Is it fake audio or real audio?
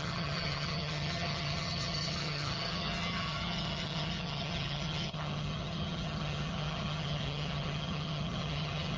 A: fake